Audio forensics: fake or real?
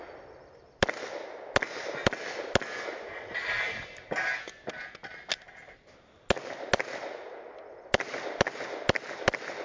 real